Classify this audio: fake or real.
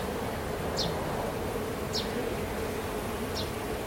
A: real